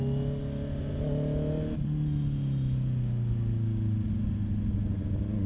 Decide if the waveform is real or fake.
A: real